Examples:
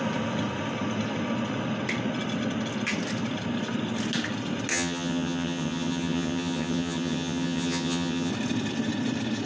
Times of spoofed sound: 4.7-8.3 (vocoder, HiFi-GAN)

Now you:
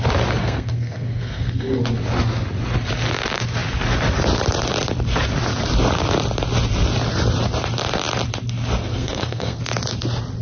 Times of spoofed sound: 0.4-1.8 (codec, SNAC); 8.8-9.6